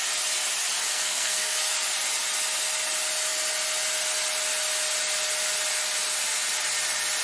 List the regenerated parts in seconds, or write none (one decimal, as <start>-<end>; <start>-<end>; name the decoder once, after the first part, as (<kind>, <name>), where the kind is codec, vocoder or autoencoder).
0.9-1.6 (codec, SNAC)